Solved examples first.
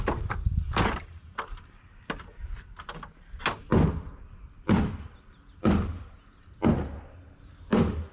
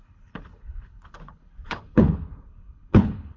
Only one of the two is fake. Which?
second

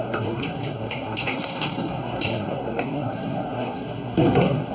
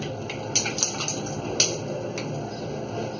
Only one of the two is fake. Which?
first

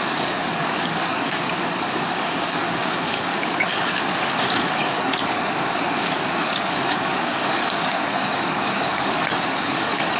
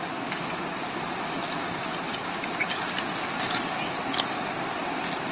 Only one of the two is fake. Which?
first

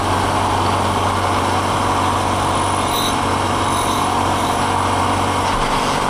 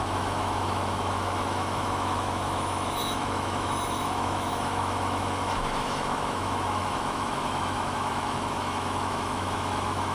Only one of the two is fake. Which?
second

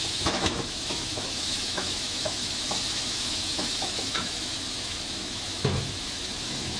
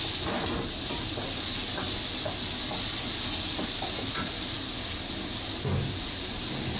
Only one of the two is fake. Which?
first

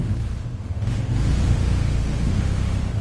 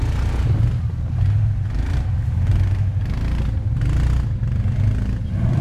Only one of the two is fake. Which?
first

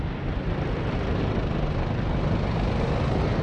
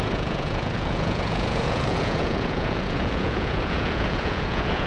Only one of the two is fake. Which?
second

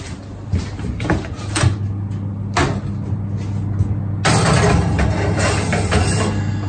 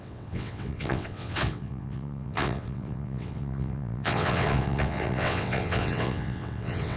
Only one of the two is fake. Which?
second